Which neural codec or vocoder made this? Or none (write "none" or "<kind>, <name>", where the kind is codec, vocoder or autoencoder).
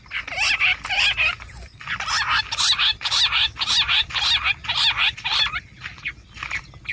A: none